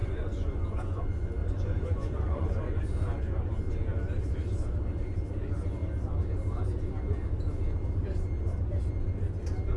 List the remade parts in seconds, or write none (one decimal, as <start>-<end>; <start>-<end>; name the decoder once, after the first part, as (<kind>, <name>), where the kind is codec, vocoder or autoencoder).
0.0-1.0 (vocoder, Vocos); 1.4-2.8